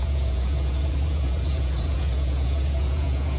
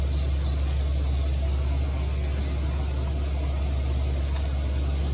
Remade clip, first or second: first